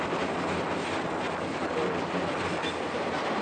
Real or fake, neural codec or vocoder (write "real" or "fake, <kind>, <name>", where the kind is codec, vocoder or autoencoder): real